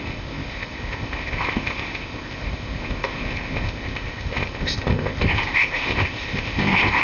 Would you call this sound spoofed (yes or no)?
yes